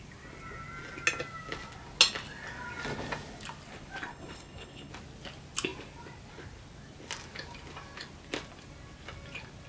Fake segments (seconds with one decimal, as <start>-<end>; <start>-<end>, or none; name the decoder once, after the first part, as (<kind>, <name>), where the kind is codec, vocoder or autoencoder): 4.1-4.9 (codec, HILCodec)